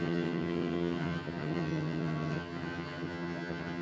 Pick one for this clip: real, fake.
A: fake